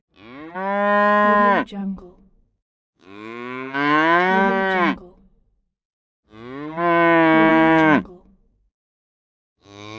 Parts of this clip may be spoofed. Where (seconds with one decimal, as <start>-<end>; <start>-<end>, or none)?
1.8-4.5; 7.5-10.0